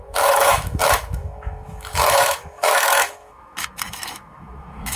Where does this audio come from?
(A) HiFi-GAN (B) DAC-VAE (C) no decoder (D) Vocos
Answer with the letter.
B